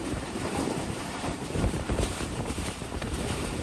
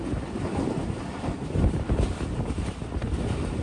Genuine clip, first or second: second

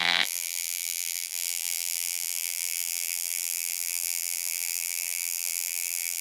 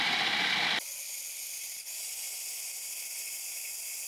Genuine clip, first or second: second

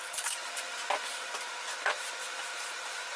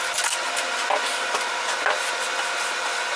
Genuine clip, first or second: second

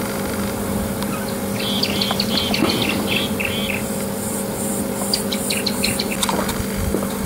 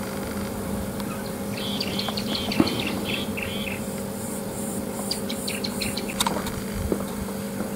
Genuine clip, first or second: first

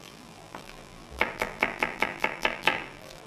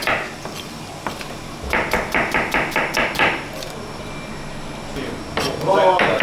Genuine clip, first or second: second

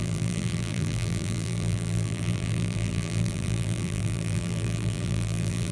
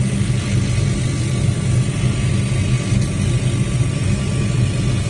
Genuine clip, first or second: second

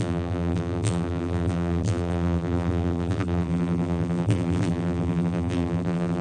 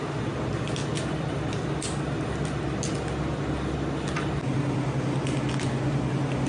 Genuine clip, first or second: second